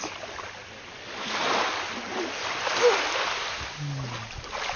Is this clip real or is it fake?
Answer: real